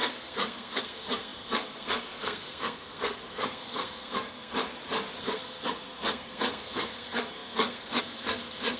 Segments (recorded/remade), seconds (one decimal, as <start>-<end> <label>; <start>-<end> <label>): 0.0-4.5 remade; 4.5-5.2 recorded; 5.2-8.8 remade